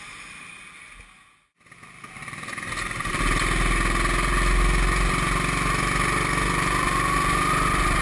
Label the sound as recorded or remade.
recorded